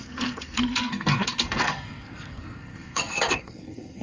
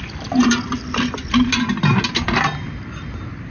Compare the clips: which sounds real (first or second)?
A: second